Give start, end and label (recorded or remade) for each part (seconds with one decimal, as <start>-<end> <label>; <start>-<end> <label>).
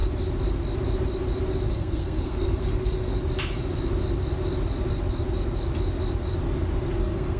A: 0.0-1.7 recorded; 1.7-3.1 remade; 3.1-7.0 recorded; 7.0-7.4 remade